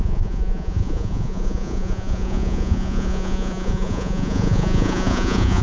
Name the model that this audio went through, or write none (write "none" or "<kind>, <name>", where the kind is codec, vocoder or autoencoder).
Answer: vocoder, Vocos